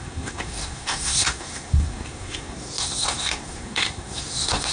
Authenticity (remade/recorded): remade